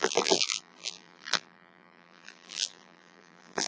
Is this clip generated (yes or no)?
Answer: yes